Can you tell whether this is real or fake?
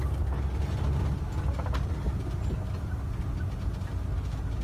real